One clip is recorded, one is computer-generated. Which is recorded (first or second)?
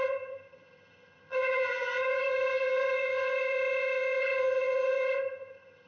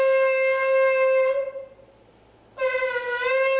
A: second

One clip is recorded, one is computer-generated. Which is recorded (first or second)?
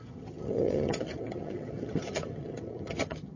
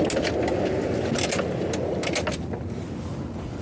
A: second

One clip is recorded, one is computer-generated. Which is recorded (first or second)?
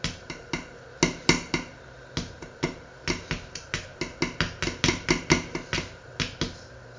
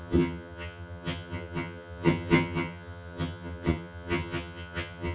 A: first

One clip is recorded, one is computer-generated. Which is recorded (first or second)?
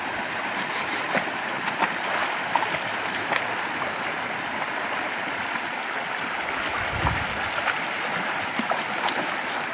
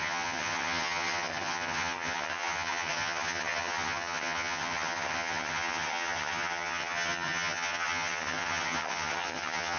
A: first